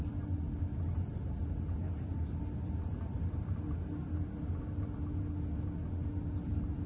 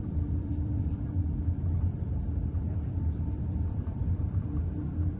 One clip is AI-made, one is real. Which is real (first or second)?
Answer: first